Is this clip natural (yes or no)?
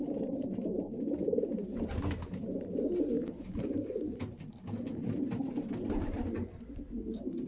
yes